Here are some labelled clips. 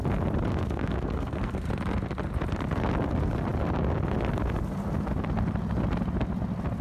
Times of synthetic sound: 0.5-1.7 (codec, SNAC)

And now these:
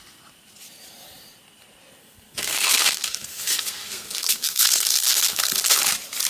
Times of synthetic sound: 2.0-5.8 (codec, SNAC)

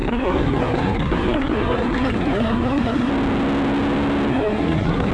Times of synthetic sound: 0.0-3.1 (codec, SNAC); 4.3-5.1

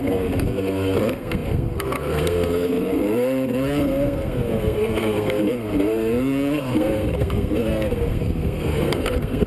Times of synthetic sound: 0.0-9.5 (codec, SNAC)

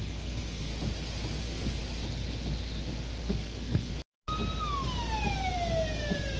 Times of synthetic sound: 0.0-0.7 (codec, SNAC); 1.4-1.8; 3.2-3.9

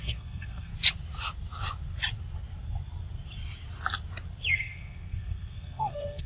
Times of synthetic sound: 0.0-0.7 (codec, SNAC); 4.5-6.3

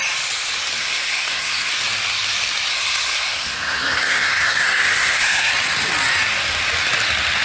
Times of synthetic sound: 0.8-1.7 (codec, SNAC); 2.7-5.5